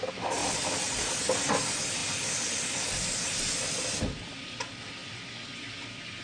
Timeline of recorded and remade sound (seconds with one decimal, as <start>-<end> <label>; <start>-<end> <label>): 0.0-0.4 recorded; 0.4-1.1 remade; 1.1-2.0 recorded; 2.0-3.2 remade; 3.2-6.2 recorded